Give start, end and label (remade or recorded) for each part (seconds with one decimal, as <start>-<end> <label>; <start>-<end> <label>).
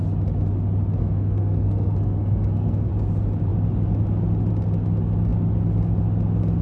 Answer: 0.0-1.0 recorded; 1.0-2.9 remade; 2.9-6.6 recorded